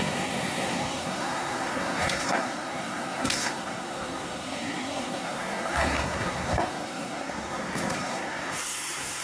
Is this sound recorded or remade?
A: remade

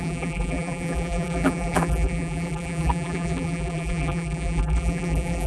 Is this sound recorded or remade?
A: remade